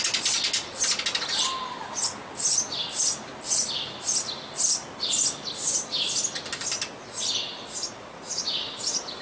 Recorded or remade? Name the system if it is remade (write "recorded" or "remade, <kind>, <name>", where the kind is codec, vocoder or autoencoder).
recorded